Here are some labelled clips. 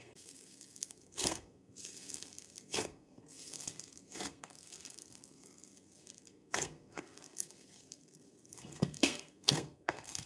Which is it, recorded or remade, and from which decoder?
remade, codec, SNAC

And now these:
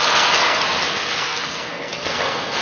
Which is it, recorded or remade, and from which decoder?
remade, codec, SNAC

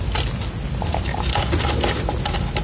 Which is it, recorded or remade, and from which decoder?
recorded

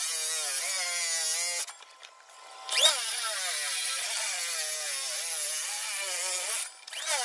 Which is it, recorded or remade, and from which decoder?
recorded